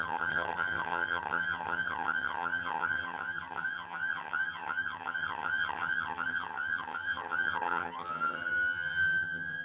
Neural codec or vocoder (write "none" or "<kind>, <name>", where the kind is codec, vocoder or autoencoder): vocoder, HiFi-GAN